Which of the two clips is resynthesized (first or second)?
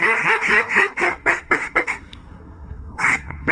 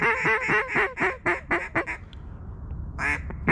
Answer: first